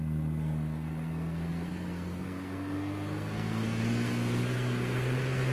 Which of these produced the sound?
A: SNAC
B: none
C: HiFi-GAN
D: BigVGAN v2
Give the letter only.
A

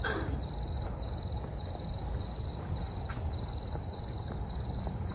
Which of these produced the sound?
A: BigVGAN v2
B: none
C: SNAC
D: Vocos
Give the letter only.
B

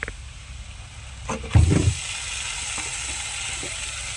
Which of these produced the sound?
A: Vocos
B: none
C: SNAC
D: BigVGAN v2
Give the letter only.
B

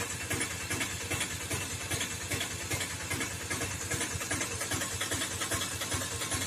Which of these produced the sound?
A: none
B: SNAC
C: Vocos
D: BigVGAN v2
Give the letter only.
A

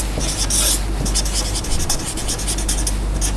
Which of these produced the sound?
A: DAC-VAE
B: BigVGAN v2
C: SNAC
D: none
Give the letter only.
D